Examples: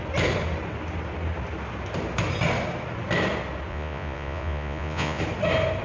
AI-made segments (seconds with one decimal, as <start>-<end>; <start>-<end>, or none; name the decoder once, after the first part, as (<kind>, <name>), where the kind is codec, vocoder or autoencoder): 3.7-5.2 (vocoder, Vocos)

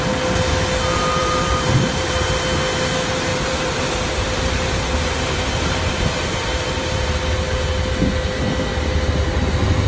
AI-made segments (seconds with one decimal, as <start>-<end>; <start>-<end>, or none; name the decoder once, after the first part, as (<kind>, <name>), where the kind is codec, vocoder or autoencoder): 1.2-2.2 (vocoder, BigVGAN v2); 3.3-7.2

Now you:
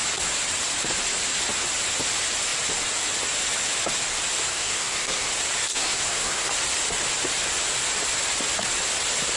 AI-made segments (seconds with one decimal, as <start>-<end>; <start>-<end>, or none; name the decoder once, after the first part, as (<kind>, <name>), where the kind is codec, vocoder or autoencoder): 4.5-5.3 (codec, SNAC); 5.7-6.5